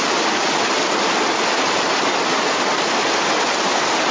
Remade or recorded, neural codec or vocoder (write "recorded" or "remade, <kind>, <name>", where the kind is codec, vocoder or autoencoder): recorded